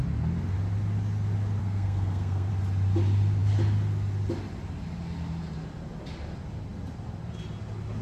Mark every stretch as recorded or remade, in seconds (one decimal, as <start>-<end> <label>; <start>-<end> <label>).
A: 0.0-1.6 recorded; 1.6-2.5 remade; 2.5-8.0 recorded

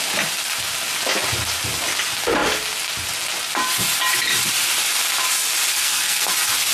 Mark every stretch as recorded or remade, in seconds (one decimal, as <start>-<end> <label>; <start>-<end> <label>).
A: 0.0-5.7 recorded; 5.7-6.3 remade; 6.3-6.7 recorded

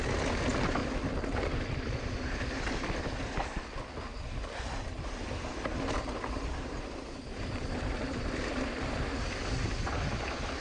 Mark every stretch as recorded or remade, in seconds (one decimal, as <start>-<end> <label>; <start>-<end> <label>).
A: 0.0-0.8 recorded; 0.8-2.4 remade; 2.4-4.1 recorded; 4.1-8.2 remade; 8.2-10.6 recorded

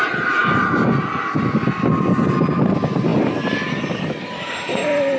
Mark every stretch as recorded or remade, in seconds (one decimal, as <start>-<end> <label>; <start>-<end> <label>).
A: 0.0-5.2 recorded

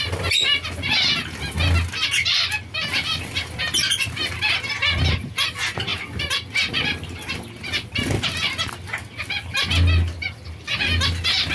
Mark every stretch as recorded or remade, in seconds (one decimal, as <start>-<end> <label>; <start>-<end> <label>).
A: 0.0-11.5 recorded

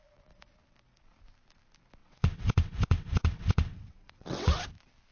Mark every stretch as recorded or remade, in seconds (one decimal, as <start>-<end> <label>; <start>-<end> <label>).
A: 0.0-2.0 recorded; 2.0-4.6 remade; 4.6-5.1 recorded

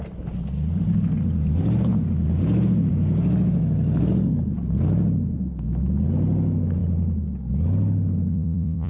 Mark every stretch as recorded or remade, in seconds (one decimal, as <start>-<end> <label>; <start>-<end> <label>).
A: 0.0-8.3 recorded; 8.3-8.9 remade

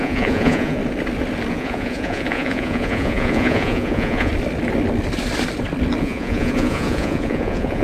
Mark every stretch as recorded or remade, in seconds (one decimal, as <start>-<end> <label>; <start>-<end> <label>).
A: 0.0-0.8 remade; 0.8-1.5 recorded; 1.5-4.3 remade; 4.3-6.0 recorded; 6.0-7.8 remade